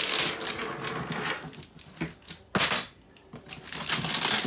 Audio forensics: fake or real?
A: real